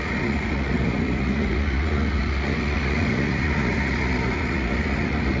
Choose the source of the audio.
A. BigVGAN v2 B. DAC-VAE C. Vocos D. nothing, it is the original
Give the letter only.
C